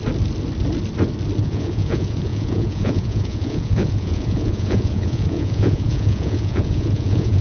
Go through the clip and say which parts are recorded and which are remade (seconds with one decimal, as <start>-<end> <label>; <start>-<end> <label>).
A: 0.0-1.4 recorded; 1.4-7.4 remade